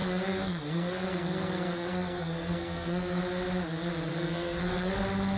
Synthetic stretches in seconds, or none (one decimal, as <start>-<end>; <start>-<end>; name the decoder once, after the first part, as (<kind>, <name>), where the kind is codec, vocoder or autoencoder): 0.0-3.2 (codec, SNAC); 4.1-5.0